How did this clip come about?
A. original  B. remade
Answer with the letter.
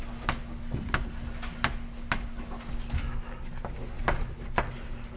A